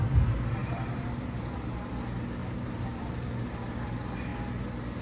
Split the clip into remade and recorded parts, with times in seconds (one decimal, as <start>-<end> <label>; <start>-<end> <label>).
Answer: 0.0-0.6 recorded; 0.6-1.9 remade; 1.9-2.4 recorded; 2.4-3.9 remade; 3.9-5.0 recorded